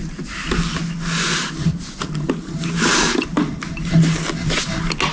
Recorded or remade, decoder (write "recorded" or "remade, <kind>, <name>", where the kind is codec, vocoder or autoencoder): recorded